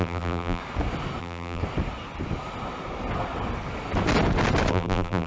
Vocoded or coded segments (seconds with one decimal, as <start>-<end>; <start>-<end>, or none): 0.0-0.6; 1.2-1.6; 4.7-5.3